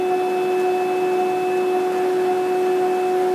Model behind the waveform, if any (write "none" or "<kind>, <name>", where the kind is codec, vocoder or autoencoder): none